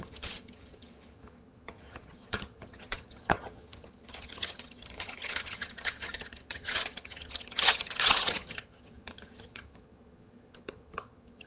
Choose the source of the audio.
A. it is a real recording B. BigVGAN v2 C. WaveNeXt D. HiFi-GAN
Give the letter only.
D